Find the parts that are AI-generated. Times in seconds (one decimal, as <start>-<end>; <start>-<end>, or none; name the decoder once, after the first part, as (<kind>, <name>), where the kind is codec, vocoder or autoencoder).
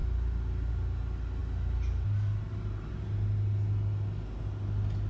none